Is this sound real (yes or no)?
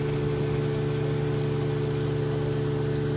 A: yes